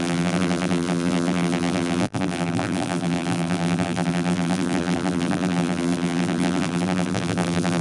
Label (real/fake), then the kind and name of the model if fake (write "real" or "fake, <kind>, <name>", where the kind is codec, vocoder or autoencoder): fake, vocoder, BigVGAN v2